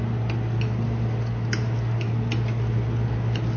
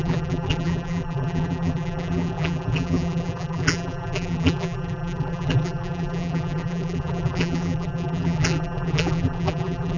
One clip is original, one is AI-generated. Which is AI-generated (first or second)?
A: second